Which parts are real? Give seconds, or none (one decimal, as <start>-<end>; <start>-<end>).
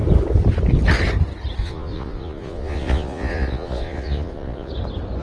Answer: 0.0-1.6; 4.7-5.2